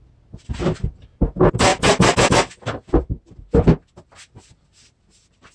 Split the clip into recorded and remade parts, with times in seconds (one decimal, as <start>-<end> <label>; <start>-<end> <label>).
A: 0.0-5.5 recorded